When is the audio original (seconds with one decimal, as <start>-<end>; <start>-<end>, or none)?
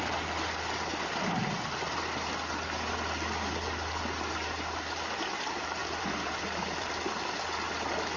0.0-5.8; 7.0-8.2